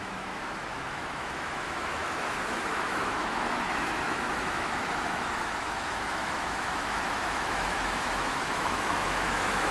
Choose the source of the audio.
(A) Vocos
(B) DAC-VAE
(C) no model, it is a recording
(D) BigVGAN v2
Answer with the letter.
B